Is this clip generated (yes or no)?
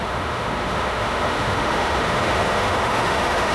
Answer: yes